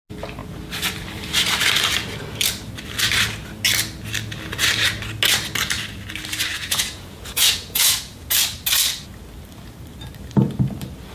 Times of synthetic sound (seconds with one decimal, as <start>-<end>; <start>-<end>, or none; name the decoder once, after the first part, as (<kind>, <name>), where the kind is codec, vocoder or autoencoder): 6.5-8.3 (vocoder, Vocos)